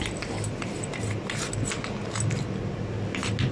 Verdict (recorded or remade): recorded